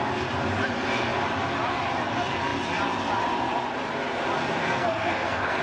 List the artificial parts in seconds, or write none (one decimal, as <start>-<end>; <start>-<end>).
4.6-5.6

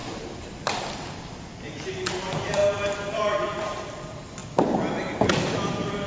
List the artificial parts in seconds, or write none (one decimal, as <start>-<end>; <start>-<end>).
0.0-2.6; 3.1-4.4; 5.5-6.1